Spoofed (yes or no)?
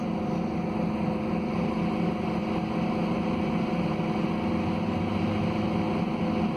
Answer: no